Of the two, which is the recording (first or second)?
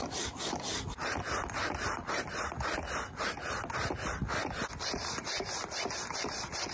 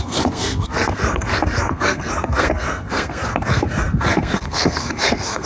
first